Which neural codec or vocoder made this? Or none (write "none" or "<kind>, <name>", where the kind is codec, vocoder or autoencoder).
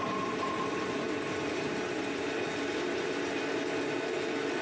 none